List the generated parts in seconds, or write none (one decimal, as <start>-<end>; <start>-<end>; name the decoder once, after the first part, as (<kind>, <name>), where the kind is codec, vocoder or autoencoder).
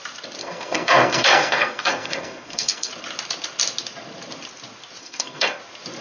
0.4-2.9 (codec, SNAC); 5.0-5.6